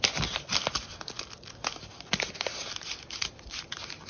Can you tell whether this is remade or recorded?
recorded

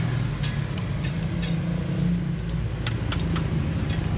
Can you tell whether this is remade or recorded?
recorded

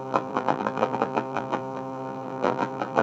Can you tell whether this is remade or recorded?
remade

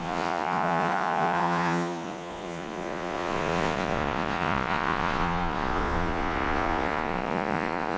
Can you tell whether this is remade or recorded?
remade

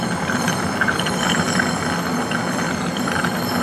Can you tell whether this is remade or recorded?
recorded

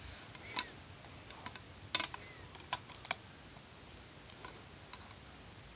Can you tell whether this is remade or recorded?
recorded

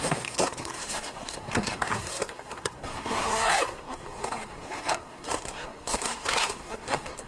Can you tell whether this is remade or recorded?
remade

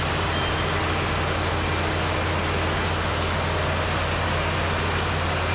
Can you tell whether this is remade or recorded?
recorded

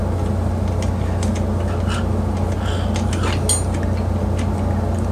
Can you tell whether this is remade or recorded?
recorded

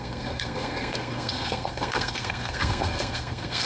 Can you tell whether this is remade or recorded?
remade